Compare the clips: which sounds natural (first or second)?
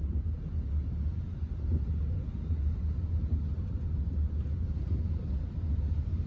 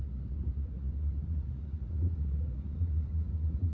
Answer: first